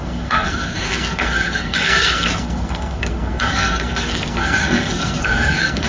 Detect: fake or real fake